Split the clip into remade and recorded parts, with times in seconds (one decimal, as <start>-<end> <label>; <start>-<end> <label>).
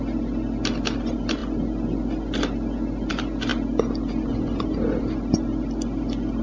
0.0-6.4 recorded